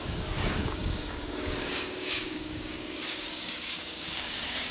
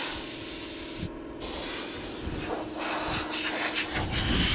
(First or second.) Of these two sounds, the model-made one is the first